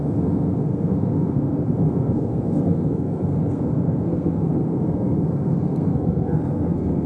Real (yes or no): no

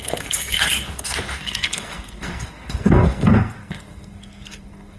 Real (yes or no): no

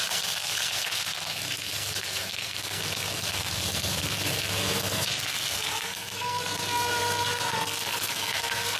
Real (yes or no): no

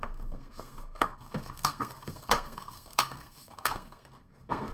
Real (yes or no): no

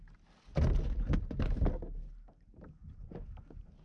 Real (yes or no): yes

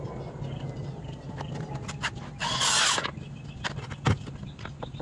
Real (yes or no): yes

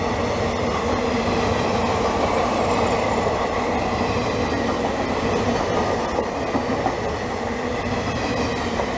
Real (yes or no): yes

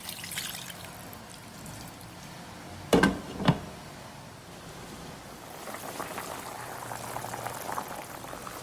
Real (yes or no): yes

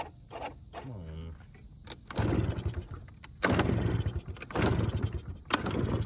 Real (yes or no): yes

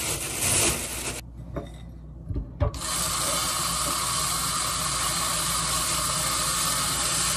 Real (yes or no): yes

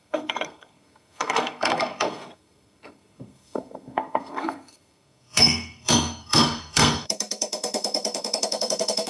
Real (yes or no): no